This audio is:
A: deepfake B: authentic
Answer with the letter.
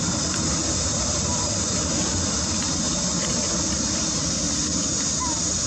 B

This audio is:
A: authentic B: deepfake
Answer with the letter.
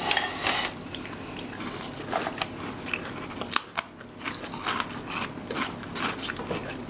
A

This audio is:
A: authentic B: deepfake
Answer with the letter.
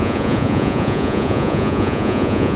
B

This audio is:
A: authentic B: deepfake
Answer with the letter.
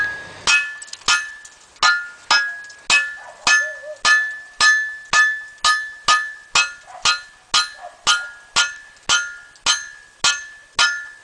A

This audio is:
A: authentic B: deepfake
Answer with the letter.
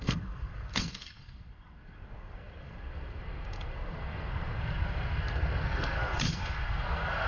B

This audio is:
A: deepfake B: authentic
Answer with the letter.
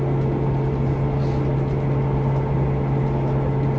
B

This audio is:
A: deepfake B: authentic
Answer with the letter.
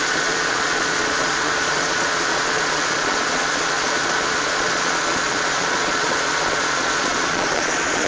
A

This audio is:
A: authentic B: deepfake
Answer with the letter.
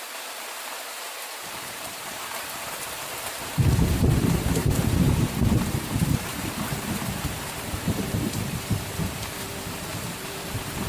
B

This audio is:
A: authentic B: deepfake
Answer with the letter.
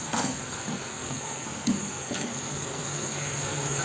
B